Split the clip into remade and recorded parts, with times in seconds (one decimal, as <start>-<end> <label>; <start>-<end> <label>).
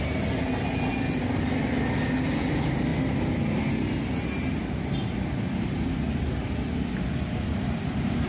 0.0-8.3 recorded